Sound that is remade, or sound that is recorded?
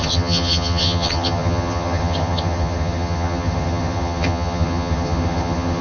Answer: remade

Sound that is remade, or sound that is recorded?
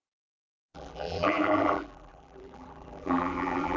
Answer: remade